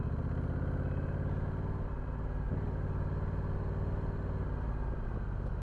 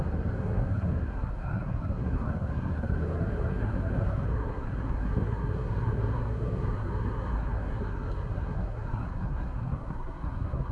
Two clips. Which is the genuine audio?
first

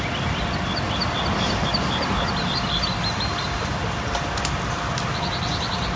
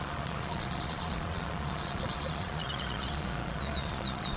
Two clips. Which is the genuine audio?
first